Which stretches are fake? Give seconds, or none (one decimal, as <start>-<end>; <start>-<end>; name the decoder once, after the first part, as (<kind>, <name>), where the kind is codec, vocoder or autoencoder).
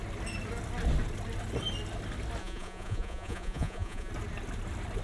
2.4-4.1 (vocoder, Vocos)